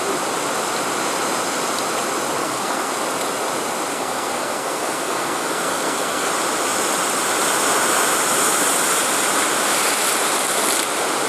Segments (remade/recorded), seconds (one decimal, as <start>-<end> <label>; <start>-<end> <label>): 0.0-2.4 recorded; 2.4-2.9 remade; 2.9-3.9 recorded; 3.9-6.3 remade; 6.3-11.3 recorded